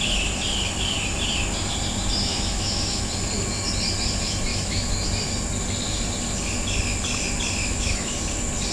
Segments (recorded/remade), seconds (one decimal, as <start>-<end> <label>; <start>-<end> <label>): 0.0-2.3 recorded; 2.3-3.0 remade; 3.0-4.5 recorded; 4.5-5.1 remade; 5.1-7.6 recorded; 7.6-8.2 remade; 8.2-8.7 recorded